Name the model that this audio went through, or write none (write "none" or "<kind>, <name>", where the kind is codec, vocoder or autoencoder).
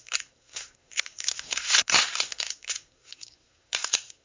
codec, SNAC